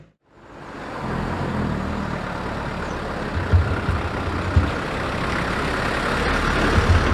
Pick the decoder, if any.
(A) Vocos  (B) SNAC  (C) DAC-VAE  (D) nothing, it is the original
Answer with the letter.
D